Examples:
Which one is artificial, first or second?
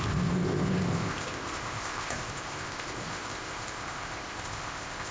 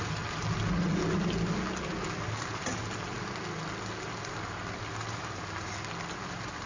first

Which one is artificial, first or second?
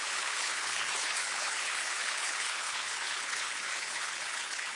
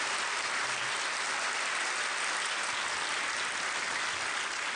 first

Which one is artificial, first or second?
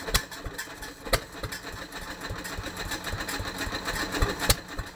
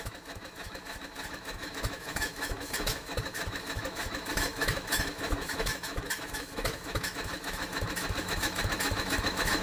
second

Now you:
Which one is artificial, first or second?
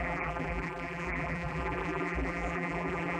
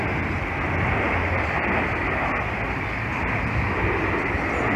first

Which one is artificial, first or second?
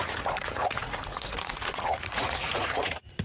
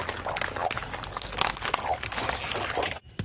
first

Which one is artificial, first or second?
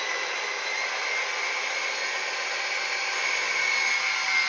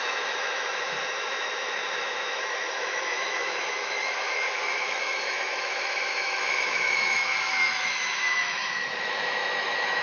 second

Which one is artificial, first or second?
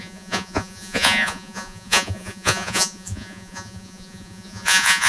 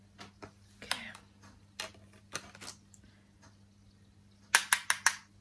first